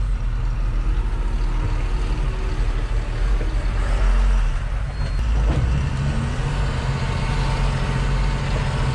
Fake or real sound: real